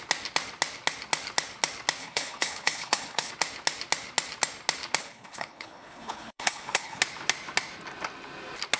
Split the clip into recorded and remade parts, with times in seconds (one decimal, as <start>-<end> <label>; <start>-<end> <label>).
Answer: 0.0-2.0 recorded; 2.0-3.3 remade; 3.3-5.0 recorded; 5.0-7.0 remade; 7.0-8.8 recorded